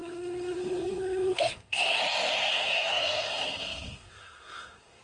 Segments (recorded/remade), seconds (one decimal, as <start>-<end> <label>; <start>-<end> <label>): 0.0-2.0 remade; 2.0-2.5 recorded; 2.5-5.0 remade